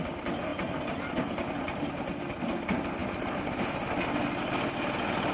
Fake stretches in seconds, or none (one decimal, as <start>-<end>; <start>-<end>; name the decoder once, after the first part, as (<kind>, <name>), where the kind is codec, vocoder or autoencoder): none